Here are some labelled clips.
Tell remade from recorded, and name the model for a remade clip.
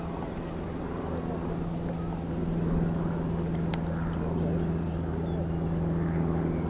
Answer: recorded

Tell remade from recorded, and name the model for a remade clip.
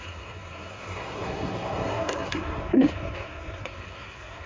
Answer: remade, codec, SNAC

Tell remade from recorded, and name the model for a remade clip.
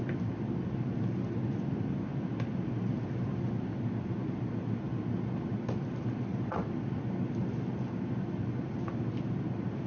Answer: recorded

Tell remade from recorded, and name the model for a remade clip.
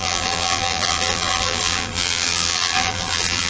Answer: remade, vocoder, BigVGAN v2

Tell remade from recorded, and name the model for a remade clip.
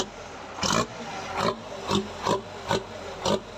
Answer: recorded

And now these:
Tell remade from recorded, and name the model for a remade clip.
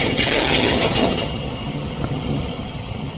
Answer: remade, vocoder, HiFi-GAN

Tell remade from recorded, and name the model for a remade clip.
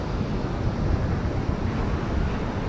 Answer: recorded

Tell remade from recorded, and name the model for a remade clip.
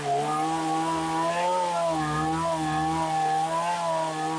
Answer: recorded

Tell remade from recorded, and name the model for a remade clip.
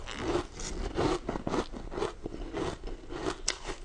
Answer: recorded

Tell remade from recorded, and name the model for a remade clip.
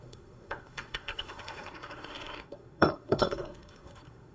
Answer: remade, codec, SNAC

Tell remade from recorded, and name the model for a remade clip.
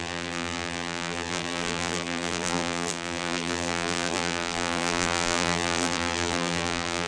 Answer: remade, vocoder, BigVGAN v2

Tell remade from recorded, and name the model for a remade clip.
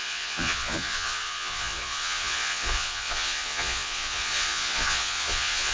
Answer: remade, vocoder, Vocos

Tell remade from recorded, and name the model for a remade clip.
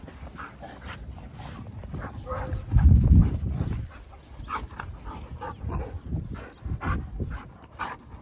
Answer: recorded